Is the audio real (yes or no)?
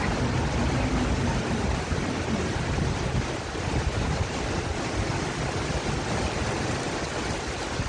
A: yes